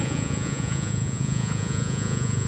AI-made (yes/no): yes